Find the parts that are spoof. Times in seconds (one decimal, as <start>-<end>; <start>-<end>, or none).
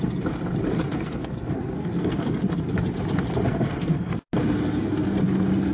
0.9-2.2; 3.5-4.1